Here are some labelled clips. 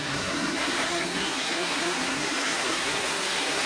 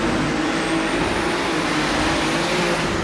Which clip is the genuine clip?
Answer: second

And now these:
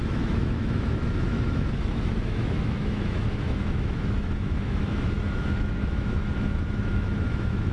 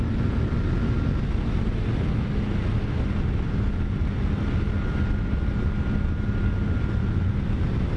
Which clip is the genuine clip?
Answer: second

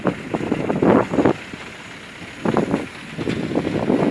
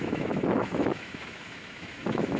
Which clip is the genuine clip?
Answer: first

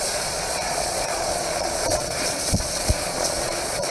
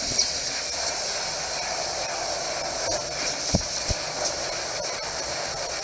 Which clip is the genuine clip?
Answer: second